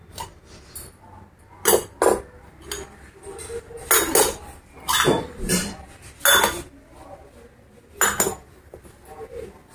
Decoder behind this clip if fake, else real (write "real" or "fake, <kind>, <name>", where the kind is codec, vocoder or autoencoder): real